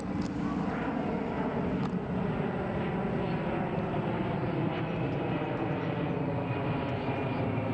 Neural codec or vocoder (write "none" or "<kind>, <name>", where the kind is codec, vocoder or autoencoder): none